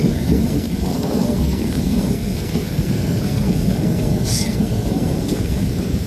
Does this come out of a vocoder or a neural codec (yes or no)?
yes